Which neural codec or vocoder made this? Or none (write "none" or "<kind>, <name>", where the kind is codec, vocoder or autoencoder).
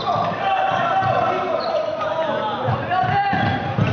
none